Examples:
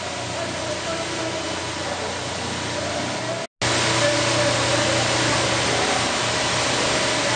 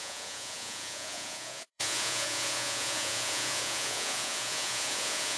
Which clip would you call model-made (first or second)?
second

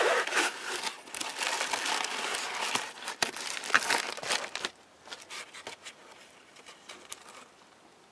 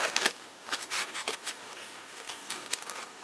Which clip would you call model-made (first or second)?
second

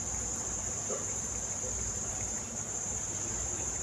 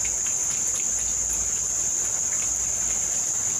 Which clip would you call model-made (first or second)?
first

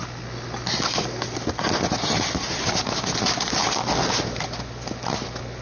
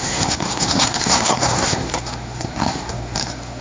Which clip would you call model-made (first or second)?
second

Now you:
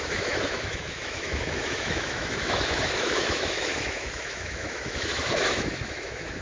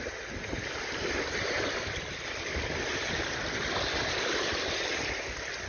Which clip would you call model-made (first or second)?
first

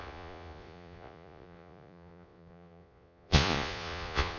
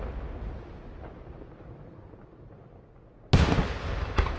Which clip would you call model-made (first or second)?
first